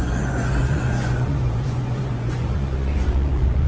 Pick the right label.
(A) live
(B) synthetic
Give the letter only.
B